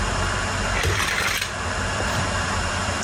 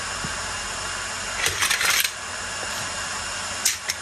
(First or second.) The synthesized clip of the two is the first